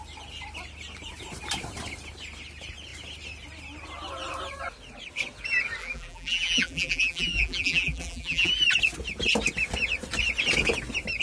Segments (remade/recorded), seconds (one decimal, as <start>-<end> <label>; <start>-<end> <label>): 0.0-5.8 recorded; 5.8-8.5 remade; 8.5-11.2 recorded